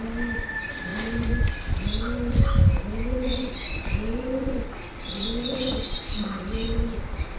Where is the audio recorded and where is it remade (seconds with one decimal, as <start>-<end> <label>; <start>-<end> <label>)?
0.0-0.9 recorded; 0.9-1.5 remade; 1.5-7.4 recorded